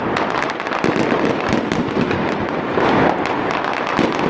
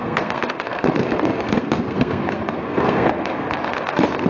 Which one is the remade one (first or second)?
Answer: second